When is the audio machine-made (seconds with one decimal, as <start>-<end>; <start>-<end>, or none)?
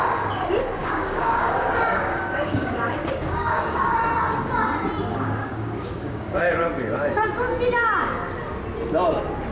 0.8-4.1; 5.1-6.5